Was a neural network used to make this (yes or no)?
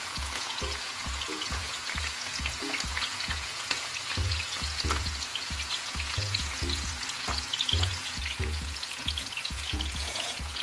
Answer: yes